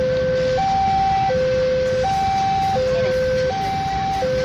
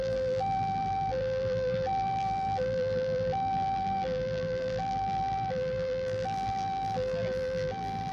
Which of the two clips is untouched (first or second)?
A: first